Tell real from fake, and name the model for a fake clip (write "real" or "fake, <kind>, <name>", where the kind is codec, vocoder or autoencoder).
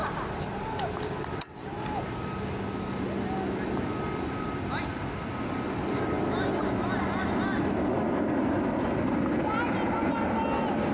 real